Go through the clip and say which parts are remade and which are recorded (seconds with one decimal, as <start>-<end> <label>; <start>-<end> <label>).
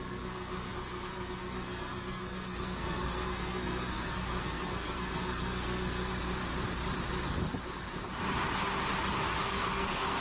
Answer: 0.0-6.1 remade; 6.1-9.4 recorded; 9.4-10.2 remade